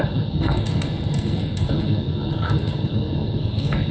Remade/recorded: remade